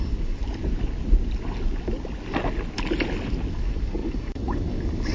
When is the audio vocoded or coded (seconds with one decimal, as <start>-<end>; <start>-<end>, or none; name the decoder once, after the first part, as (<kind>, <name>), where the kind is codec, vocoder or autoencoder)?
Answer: 0.0-0.4 (codec, DAC); 3.5-5.1